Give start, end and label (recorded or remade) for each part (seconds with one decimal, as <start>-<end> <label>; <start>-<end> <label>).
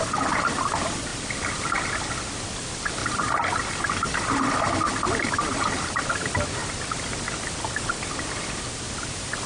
0.0-1.1 recorded; 1.1-2.2 remade; 2.2-9.5 recorded